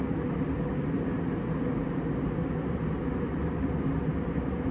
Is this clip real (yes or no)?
yes